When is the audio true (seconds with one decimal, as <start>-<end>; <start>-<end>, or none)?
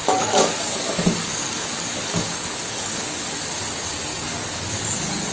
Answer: 3.2-4.1; 4.7-5.3